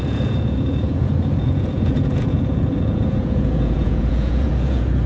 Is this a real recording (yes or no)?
no